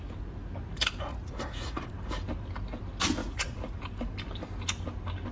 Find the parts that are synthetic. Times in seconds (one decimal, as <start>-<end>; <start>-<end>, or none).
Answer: 1.1-1.9; 3.2-3.8